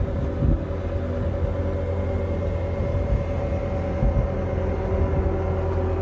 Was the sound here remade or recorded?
recorded